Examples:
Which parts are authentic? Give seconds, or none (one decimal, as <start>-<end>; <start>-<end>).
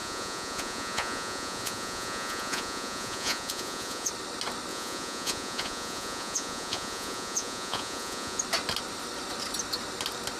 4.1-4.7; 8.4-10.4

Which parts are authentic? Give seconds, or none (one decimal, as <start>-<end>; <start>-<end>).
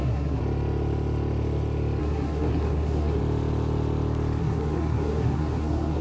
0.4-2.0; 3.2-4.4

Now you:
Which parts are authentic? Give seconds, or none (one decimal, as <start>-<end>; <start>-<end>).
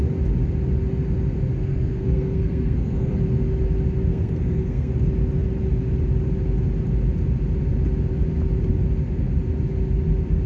0.0-1.6; 3.2-4.1; 4.9-10.5